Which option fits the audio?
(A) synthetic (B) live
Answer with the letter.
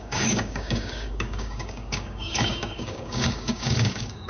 A